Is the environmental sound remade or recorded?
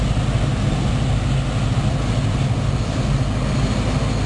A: recorded